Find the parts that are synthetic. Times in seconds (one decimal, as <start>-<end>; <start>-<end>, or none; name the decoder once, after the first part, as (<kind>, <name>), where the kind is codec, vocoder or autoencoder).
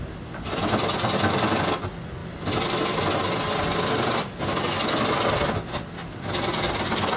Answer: none